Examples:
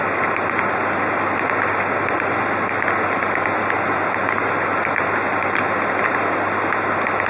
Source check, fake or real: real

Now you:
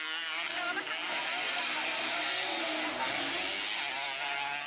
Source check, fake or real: real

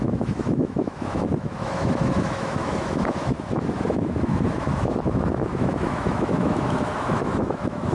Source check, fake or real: fake